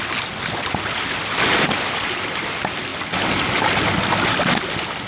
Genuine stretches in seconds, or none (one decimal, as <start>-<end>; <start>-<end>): 0.0-5.1